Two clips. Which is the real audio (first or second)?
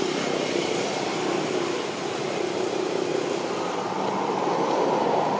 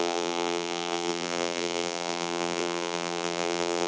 first